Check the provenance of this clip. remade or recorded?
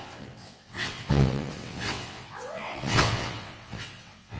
remade